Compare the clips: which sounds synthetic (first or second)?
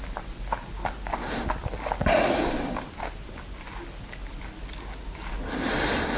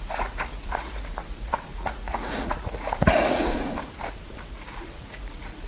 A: second